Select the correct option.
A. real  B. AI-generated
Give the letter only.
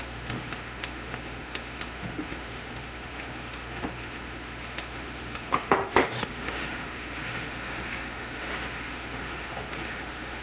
B